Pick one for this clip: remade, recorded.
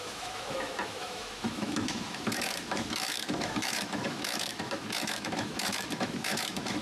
remade